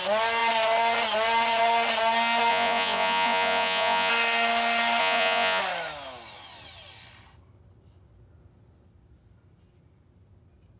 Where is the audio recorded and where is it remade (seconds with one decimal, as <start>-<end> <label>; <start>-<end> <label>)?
0.0-2.5 recorded; 2.5-4.1 remade; 4.1-5.0 recorded; 5.0-5.6 remade; 5.6-10.8 recorded